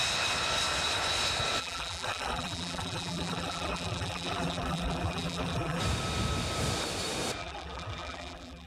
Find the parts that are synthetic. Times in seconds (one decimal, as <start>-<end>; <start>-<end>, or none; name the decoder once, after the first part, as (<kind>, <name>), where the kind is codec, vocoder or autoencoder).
1.6-5.8 (vocoder, BigVGAN v2); 7.4-8.7